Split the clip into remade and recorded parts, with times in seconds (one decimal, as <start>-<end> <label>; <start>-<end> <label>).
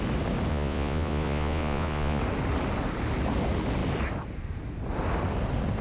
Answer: 0.0-0.5 recorded; 0.5-2.2 remade; 2.2-5.8 recorded